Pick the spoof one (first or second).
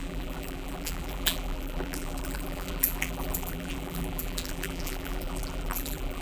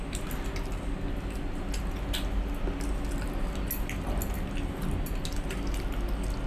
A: first